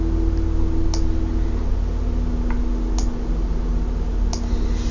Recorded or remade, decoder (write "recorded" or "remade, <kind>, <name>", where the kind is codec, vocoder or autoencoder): recorded